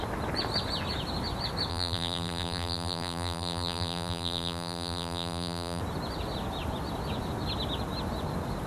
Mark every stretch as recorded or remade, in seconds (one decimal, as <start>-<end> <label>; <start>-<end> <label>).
0.0-1.7 recorded; 1.7-5.8 remade; 5.8-8.7 recorded